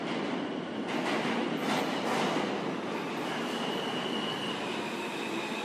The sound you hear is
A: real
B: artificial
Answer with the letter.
A